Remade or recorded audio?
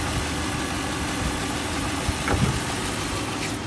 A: recorded